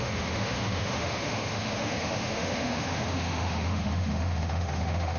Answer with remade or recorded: remade